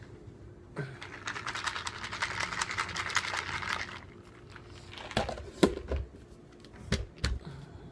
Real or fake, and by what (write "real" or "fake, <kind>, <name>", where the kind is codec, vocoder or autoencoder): real